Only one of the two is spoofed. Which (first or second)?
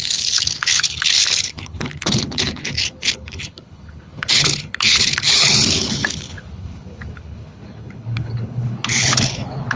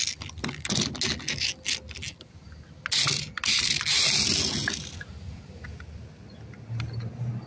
first